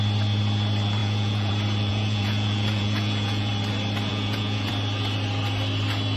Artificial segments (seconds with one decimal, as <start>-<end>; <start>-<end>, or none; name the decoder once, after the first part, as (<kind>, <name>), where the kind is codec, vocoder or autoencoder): 1.0-1.5 (vocoder, Vocos); 1.9-3.5; 4.1-4.7